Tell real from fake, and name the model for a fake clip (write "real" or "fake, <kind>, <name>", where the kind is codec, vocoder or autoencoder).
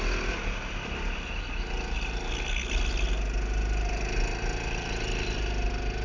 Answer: real